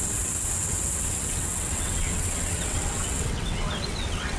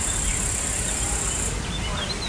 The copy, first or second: first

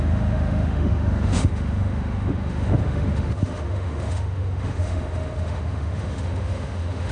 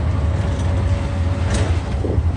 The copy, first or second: first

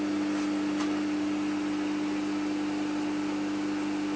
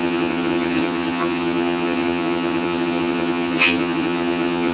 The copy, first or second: second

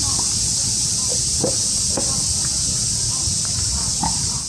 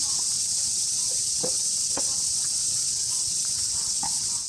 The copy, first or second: second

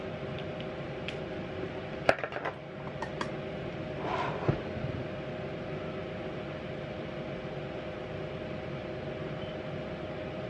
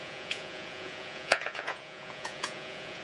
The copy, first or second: second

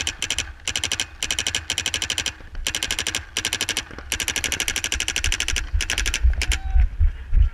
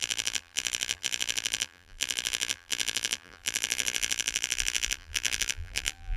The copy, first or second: second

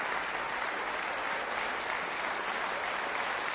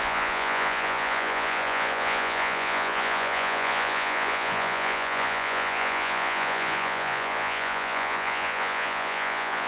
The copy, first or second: second